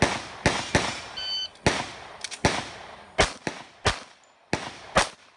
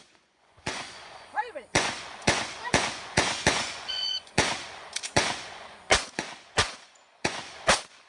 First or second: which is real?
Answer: first